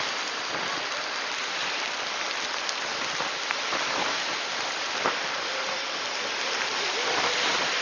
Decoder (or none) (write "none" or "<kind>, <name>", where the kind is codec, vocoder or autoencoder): none